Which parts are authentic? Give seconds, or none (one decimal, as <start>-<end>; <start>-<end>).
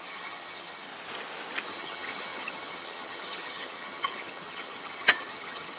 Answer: 0.9-1.7